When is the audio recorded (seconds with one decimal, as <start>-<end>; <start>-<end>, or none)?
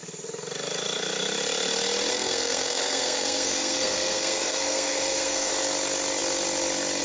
0.0-2.1; 5.5-7.0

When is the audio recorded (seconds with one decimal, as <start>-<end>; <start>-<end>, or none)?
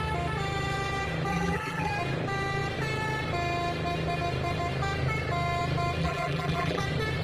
0.0-1.3; 1.9-6.0; 6.8-7.2